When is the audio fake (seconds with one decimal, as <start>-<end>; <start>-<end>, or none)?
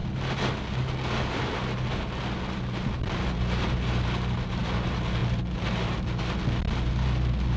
none